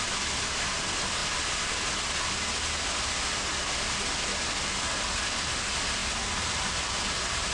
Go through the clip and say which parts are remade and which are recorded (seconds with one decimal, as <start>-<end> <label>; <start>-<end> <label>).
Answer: 0.0-3.5 recorded; 3.5-4.0 remade; 4.0-6.0 recorded; 6.0-7.0 remade; 7.0-7.5 recorded